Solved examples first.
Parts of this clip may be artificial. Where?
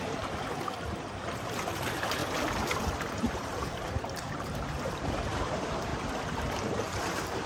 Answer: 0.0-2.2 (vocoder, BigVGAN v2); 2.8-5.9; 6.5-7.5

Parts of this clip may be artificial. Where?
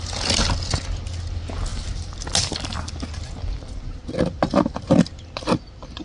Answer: none